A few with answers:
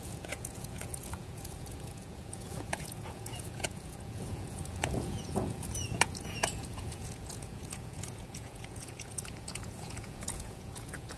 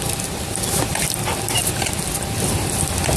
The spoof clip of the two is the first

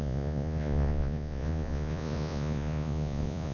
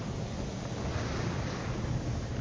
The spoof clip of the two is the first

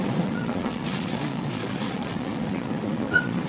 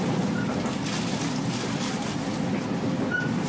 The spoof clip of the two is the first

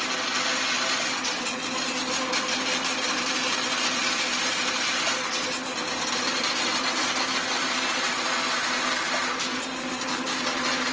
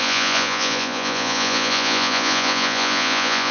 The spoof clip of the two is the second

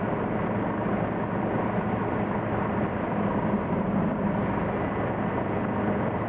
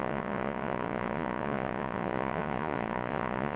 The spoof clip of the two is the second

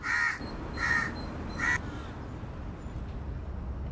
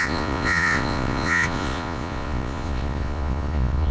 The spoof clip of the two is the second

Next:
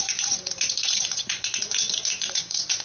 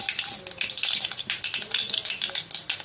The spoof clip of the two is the first